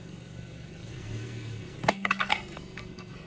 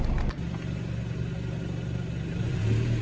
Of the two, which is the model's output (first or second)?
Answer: first